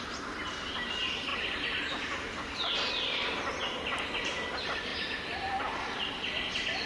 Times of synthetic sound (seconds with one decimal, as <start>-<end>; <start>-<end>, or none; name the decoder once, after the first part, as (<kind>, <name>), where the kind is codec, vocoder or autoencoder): none